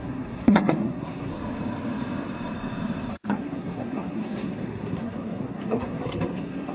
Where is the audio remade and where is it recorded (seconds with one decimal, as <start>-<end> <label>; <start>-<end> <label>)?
0.0-1.3 remade; 1.3-3.1 recorded; 3.1-6.7 remade